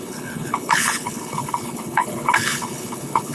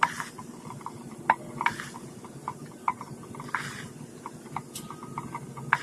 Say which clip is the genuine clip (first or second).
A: second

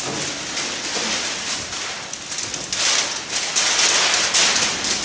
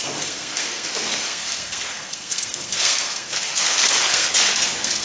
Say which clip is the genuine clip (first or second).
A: first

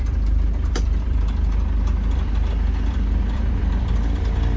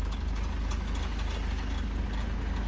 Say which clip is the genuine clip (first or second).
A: second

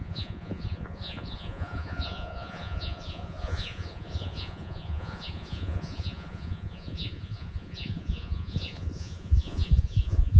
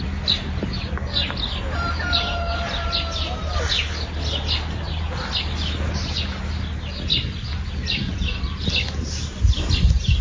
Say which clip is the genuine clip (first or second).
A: second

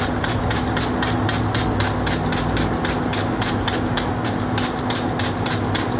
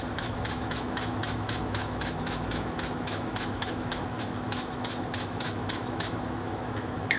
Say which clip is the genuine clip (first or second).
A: first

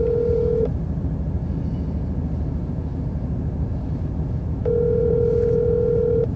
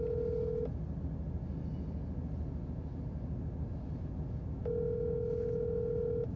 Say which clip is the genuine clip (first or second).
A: second